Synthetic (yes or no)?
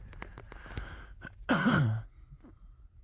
no